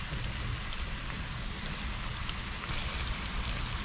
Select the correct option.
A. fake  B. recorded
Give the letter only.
B